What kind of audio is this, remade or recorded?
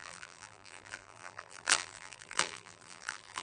remade